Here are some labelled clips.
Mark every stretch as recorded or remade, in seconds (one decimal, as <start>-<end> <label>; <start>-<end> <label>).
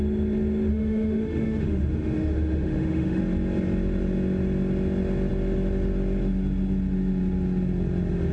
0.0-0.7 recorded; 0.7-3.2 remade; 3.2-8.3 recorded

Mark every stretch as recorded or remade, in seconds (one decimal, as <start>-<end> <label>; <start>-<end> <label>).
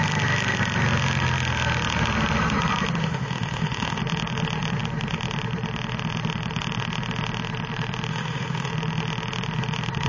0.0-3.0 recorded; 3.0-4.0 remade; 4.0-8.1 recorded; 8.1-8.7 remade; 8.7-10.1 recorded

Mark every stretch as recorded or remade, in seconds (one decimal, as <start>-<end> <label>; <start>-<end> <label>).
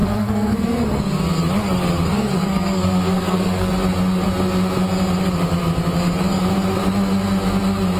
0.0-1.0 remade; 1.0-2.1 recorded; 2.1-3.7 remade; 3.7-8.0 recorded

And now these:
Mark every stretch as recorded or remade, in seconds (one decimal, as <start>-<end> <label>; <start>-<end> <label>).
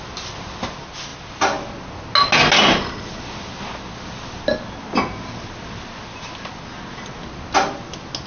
0.0-8.3 recorded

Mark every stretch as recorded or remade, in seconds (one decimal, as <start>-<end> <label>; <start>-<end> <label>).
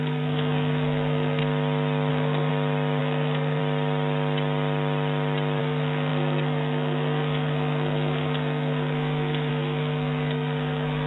0.0-1.4 remade; 1.4-2.1 recorded; 2.1-2.5 remade; 2.5-3.0 recorded; 3.0-3.6 remade; 3.6-5.6 recorded; 5.6-11.1 remade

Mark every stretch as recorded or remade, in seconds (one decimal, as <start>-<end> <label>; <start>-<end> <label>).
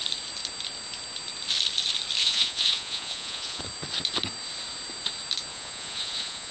0.0-2.2 recorded; 2.2-3.6 remade; 3.6-5.5 recorded; 5.5-6.5 remade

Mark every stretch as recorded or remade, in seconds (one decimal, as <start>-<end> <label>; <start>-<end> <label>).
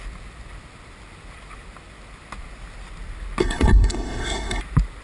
0.0-3.4 recorded; 3.4-4.6 remade; 4.6-5.0 recorded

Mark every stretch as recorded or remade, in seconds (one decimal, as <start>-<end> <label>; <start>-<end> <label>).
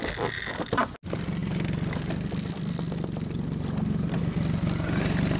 0.0-5.4 recorded